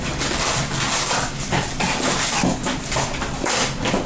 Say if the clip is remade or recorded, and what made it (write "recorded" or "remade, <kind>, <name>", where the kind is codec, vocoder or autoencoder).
recorded